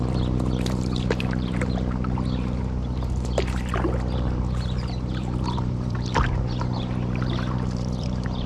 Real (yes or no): no